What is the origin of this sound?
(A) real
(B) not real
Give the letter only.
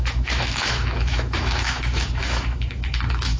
B